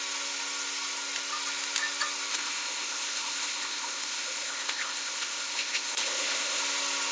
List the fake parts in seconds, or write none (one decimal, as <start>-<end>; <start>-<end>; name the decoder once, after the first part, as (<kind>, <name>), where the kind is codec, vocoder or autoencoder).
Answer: 2.3-6.6 (codec, ZipCodec)

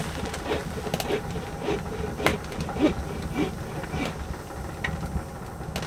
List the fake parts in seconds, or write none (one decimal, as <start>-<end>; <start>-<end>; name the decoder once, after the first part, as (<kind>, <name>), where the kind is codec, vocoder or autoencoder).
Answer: 0.0-0.6 (vocoder, BigVGAN v2); 1.1-2.3

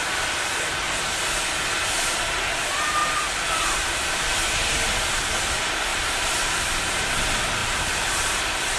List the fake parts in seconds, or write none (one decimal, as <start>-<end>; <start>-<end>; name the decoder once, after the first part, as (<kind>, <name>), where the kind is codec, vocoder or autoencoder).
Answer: 5.9-6.5 (vocoder, BigVGAN v2); 7.6-8.4

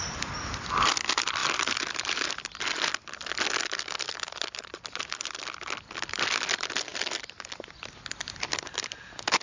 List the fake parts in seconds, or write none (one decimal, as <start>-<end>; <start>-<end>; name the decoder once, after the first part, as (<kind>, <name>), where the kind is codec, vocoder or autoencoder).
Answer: none

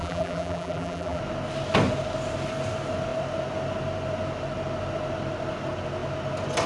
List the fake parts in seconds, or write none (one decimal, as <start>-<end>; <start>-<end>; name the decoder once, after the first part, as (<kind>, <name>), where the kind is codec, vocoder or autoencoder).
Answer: 0.0-1.2 (vocoder, BigVGAN v2)